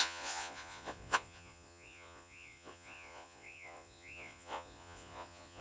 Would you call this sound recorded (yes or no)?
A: no